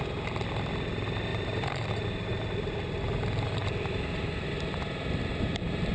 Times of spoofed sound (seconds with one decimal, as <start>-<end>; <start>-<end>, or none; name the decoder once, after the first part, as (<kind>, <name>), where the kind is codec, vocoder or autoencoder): 1.3-2.7 (vocoder, BigVGAN v2); 3.6-4.3; 5.3-5.9